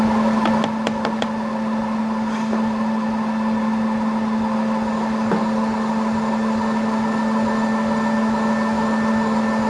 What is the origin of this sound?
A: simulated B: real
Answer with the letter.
B